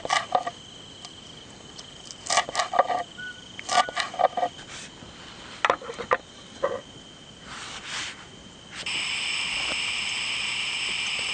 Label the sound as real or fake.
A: real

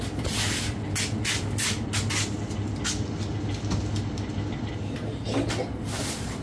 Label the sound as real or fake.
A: real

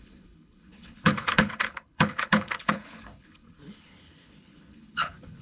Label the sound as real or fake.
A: fake